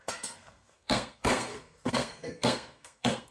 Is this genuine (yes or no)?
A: no